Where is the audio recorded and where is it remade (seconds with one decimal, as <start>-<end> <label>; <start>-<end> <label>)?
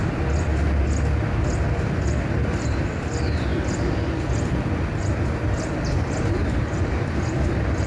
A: 0.0-0.5 remade; 0.5-1.7 recorded; 1.7-7.9 remade